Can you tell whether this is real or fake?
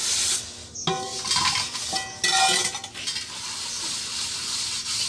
real